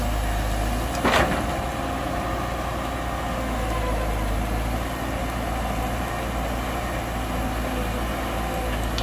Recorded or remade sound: recorded